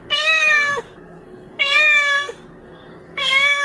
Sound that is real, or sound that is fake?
fake